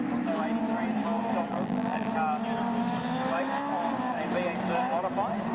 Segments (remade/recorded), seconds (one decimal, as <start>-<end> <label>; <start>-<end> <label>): 0.0-1.5 recorded; 1.5-2.1 remade; 2.1-5.5 recorded